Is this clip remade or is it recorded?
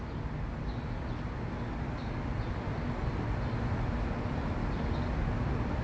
recorded